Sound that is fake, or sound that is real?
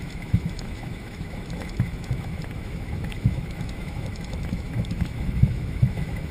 fake